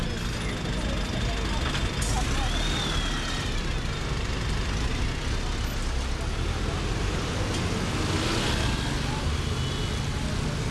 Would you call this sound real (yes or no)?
yes